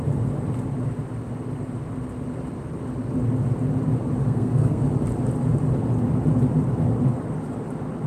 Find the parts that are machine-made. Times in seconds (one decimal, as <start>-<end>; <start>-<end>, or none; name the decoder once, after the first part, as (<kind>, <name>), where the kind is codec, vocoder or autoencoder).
4.2-4.8 (codec, SNAC)